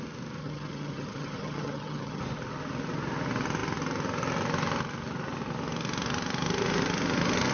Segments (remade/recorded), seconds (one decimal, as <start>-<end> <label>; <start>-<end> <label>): 0.0-0.4 recorded; 0.4-2.2 remade; 2.2-7.5 recorded